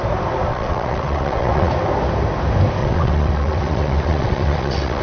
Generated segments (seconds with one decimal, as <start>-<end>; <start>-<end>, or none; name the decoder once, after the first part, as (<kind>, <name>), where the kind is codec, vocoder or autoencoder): 0.5-1.7 (vocoder, WaveNeXt); 2.8-5.0